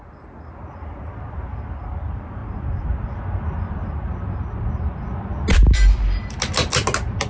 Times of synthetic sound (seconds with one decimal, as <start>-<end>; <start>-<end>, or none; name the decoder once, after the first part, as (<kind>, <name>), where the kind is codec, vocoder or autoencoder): none